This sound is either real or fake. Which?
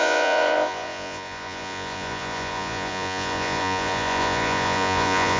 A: fake